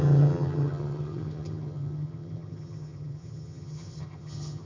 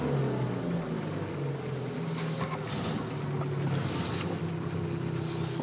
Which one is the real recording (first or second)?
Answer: second